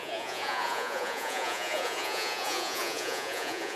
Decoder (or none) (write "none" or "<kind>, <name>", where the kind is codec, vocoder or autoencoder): vocoder, Vocos